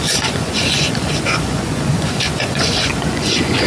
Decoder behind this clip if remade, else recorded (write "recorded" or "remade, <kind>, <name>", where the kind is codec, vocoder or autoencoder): remade, vocoder, Vocos